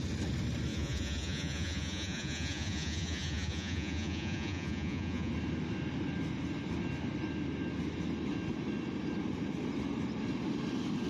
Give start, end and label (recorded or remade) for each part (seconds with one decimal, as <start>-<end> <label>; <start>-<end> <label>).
0.0-0.7 recorded; 0.7-5.3 remade; 5.3-11.1 recorded